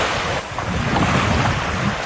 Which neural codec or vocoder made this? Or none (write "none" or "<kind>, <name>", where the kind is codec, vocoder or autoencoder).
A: none